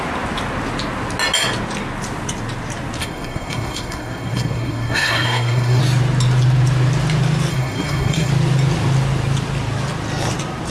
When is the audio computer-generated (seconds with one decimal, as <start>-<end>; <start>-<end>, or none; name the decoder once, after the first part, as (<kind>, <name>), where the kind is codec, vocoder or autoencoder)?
3.0-5.8 (codec, SNAC); 7.5-8.3